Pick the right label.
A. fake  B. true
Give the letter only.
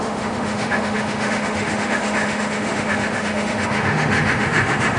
A